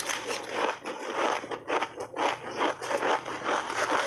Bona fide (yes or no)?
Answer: yes